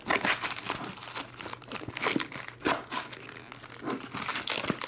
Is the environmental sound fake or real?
real